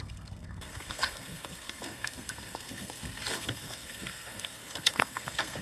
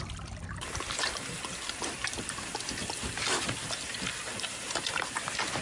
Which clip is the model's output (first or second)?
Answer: first